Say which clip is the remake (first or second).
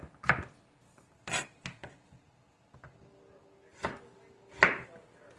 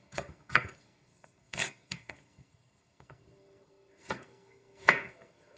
second